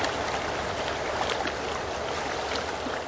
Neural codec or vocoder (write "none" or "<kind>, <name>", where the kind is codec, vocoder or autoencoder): none